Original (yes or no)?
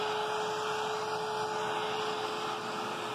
yes